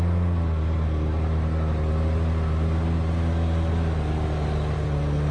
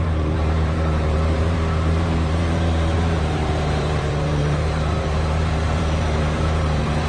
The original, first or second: first